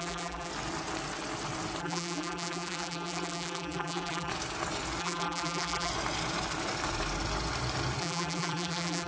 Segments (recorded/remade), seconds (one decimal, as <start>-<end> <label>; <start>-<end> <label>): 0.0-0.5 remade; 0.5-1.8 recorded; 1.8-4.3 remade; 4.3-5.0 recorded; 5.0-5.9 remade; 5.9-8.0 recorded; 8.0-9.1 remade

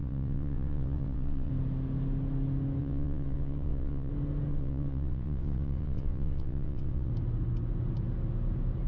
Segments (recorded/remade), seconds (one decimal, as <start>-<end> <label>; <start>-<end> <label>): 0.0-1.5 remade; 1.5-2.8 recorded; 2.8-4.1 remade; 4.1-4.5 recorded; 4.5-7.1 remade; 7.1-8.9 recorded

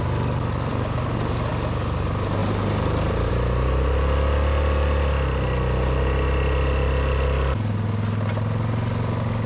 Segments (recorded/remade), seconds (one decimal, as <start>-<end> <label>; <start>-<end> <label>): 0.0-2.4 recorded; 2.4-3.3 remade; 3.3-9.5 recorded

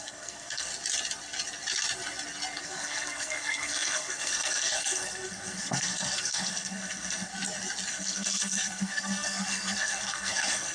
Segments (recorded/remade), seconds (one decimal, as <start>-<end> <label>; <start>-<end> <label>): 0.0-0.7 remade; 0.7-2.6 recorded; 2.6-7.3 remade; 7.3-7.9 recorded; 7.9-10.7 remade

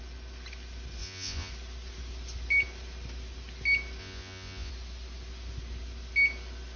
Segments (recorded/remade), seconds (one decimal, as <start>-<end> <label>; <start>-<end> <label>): 0.0-1.0 recorded; 1.0-1.5 remade; 1.5-4.0 recorded; 4.0-4.7 remade; 4.7-6.8 recorded